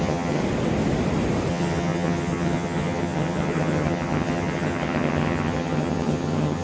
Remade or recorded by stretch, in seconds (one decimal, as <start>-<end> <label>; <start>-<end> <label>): 0.0-0.4 remade; 0.4-1.5 recorded; 1.5-6.6 remade